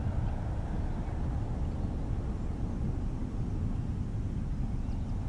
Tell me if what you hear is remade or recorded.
recorded